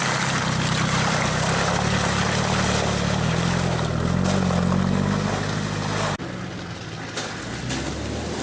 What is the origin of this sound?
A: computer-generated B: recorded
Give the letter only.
B